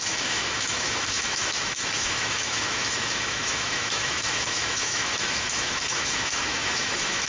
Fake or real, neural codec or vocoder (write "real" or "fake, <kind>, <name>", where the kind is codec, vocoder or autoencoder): fake, autoencoder, DAC-VAE